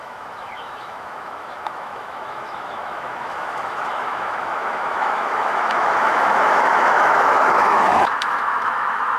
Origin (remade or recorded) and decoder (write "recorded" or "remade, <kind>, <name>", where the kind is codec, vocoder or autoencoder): remade, autoencoder, DAC-VAE